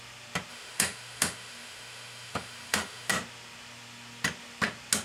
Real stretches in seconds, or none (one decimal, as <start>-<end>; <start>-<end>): 0.0-0.5; 3.1-5.0